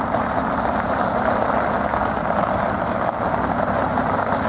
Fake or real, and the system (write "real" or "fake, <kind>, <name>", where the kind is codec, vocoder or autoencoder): real